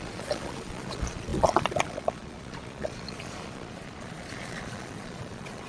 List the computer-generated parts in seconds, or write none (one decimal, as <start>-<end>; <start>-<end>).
0.0-5.7